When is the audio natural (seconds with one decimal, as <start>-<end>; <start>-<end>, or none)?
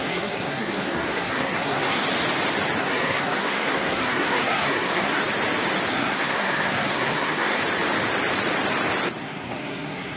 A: 2.0-2.8; 5.2-5.9; 7.6-9.2